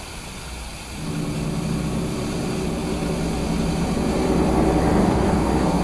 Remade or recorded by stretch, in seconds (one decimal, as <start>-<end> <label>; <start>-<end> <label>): 0.0-5.0 recorded; 5.0-5.8 remade